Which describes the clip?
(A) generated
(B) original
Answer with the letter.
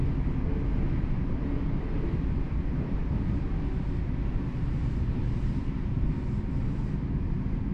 B